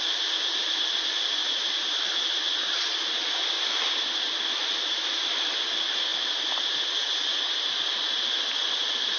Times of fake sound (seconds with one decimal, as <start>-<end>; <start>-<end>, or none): 1.4-2.4; 4.6-5.3